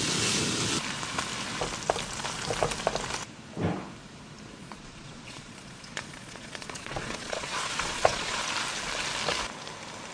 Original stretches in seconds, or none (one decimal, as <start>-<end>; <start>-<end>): 0.0-4.6; 8.4-10.1